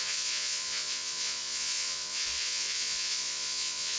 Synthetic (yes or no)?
yes